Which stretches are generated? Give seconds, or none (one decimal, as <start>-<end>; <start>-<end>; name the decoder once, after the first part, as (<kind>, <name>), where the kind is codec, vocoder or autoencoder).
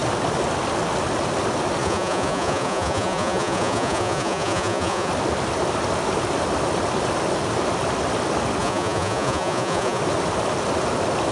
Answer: 1.8-5.1 (vocoder, Vocos); 8.6-10.0